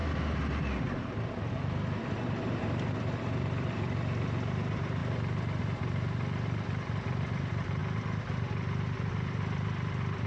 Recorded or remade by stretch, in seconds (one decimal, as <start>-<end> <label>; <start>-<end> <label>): 0.0-0.6 recorded; 0.6-5.0 remade; 5.0-5.6 recorded; 5.6-7.8 remade; 7.8-9.1 recorded; 9.1-10.3 remade